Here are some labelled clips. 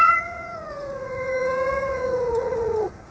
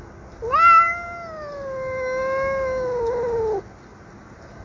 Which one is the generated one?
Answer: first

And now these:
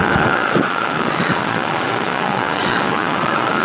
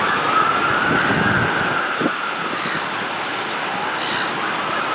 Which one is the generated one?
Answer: first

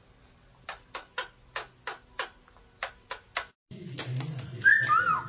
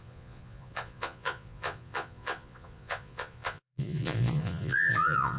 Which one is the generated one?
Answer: second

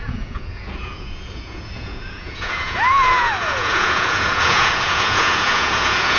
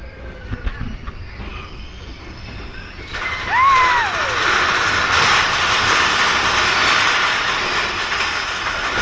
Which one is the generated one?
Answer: first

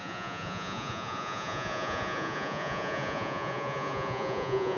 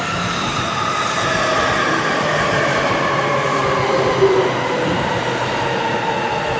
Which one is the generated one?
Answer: first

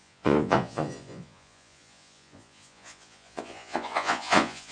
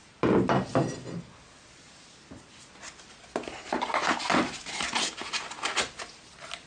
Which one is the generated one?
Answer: first